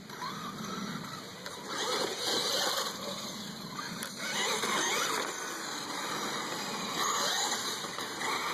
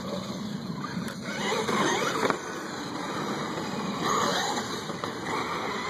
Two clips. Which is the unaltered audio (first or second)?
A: first